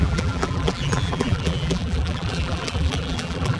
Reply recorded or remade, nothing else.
remade